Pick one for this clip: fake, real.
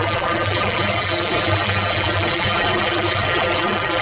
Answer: fake